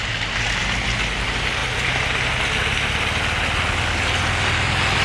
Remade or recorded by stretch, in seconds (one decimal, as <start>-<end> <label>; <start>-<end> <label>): 0.0-5.0 recorded

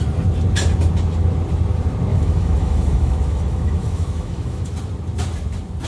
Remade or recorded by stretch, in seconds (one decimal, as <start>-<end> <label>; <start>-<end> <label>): 0.0-2.1 recorded; 2.1-4.7 remade; 4.7-5.9 recorded

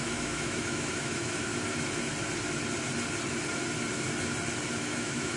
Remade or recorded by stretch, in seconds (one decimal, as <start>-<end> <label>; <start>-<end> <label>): 0.0-1.5 remade; 1.5-4.7 recorded; 4.7-5.4 remade